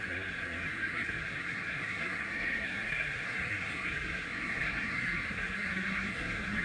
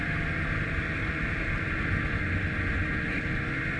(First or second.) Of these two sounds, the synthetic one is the first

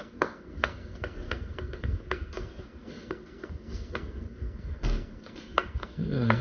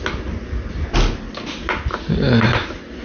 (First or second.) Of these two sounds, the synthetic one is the first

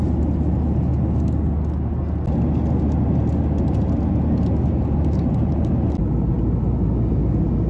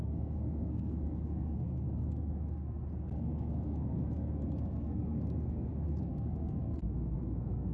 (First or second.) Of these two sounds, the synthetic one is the second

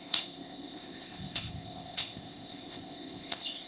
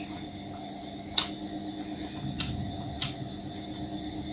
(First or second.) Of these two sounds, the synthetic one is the first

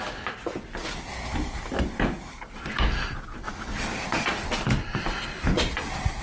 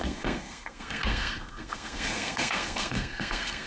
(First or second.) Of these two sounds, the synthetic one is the second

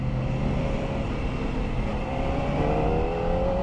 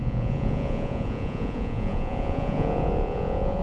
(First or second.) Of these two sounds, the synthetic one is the second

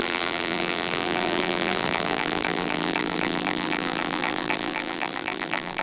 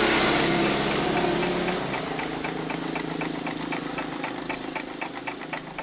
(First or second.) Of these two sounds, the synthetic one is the first